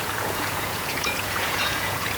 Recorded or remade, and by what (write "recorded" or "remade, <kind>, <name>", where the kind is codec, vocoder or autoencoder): remade, vocoder, Vocos